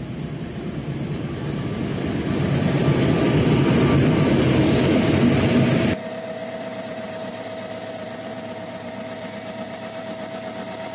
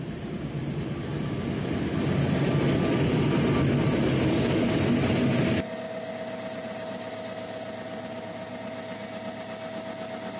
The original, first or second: second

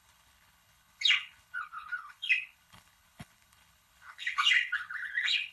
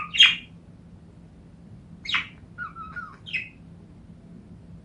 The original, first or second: second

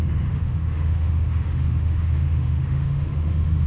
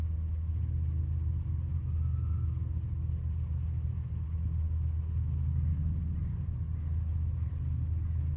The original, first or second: second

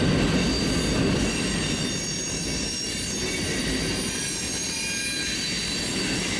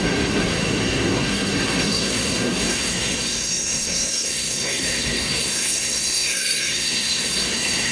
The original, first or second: first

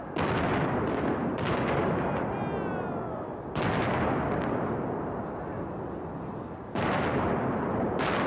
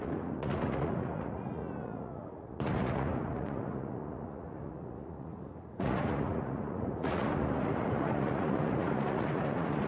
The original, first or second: first